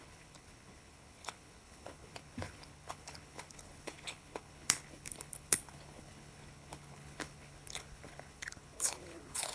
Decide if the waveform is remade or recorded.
remade